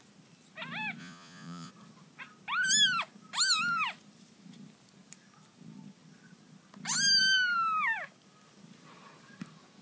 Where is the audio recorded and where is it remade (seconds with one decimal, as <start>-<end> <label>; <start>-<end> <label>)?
0.0-1.0 recorded; 1.0-1.7 remade; 1.7-9.8 recorded